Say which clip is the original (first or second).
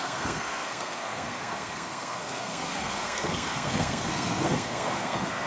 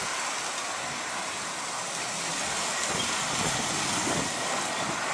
second